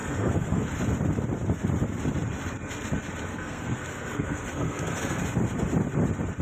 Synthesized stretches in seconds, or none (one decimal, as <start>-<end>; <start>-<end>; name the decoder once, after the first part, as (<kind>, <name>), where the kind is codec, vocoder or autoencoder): 0.0-0.6 (codec, SNAC); 3.3-5.2

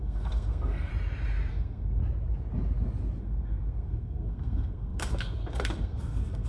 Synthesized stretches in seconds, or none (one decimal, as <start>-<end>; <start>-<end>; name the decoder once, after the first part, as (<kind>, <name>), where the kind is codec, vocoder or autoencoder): 0.0-0.9 (codec, SNAC); 1.5-2.0; 3.2-6.5